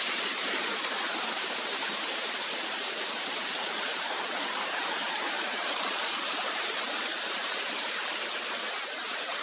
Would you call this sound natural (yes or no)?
no